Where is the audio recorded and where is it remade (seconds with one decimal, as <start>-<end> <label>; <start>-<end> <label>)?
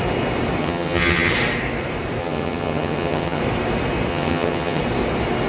0.0-0.6 recorded; 0.6-1.3 remade; 1.3-2.2 recorded; 2.2-3.4 remade; 3.4-4.1 recorded; 4.1-4.8 remade; 4.8-5.5 recorded